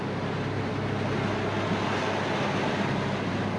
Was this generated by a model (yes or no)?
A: no